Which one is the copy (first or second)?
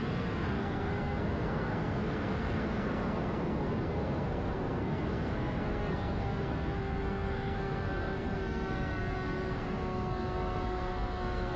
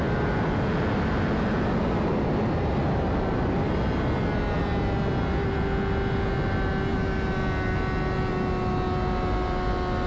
first